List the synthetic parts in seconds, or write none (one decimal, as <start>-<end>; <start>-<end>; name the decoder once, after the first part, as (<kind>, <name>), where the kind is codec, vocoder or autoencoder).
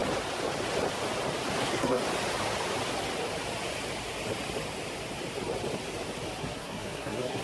1.6-2.0 (codec, SNAC); 6.4-7.4